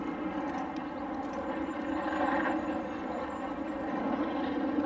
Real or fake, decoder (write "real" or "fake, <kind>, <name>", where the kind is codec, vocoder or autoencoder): real